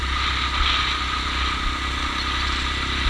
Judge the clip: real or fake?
real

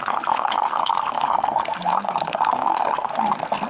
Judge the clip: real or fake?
fake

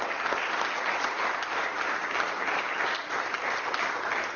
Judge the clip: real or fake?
real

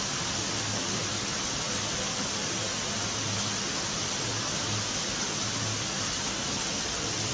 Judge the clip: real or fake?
real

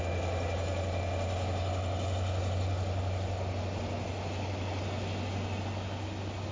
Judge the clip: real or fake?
real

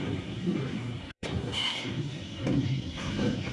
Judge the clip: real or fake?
fake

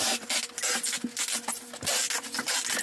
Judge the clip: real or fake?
real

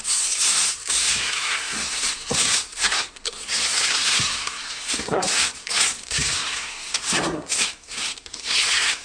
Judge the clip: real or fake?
fake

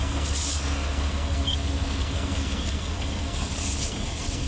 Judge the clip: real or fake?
fake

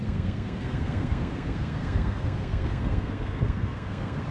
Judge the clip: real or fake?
fake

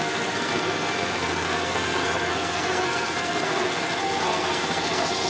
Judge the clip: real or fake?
fake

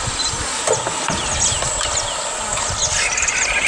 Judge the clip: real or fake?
real